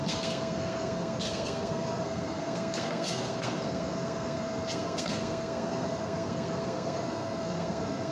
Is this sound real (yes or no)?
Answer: no